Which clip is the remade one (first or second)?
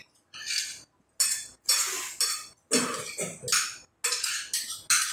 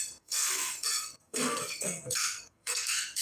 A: second